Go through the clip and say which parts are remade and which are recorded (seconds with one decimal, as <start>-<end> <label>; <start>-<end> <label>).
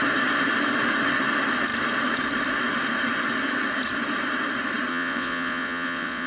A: 0.0-4.9 recorded; 4.9-6.3 remade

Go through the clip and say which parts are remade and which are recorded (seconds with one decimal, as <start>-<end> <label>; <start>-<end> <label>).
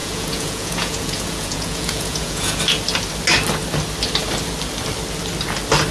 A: 0.0-2.6 remade; 2.6-5.9 recorded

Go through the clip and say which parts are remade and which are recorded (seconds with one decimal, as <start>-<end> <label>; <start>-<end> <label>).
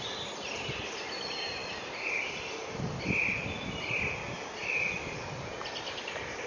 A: 0.0-6.5 recorded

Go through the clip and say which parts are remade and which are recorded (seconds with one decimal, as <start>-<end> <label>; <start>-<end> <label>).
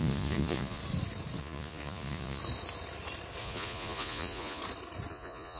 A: 0.0-0.8 remade; 0.8-1.4 recorded; 1.4-2.4 remade; 2.4-3.4 recorded; 3.4-4.6 remade; 4.6-5.1 recorded; 5.1-5.6 remade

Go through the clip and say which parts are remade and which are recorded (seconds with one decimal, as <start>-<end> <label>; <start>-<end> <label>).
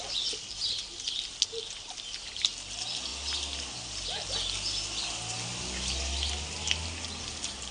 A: 0.0-7.7 recorded